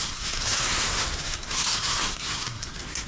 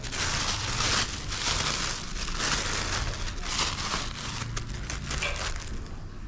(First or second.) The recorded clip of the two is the second